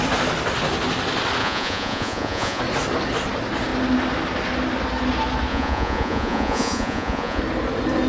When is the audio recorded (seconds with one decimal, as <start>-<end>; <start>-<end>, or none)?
0.0-1.4; 2.6-5.5; 7.4-8.1